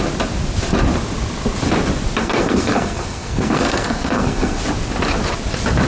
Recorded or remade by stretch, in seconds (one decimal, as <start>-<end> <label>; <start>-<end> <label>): 0.0-2.2 recorded; 2.2-4.6 remade; 4.6-5.9 recorded